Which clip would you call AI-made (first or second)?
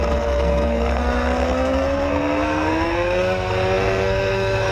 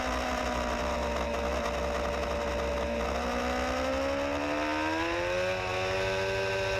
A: first